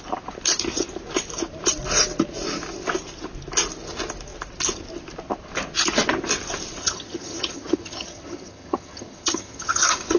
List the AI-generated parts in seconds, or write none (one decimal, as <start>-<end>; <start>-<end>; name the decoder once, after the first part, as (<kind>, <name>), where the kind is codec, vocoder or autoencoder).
6.8-10.2 (vocoder, HiFi-GAN)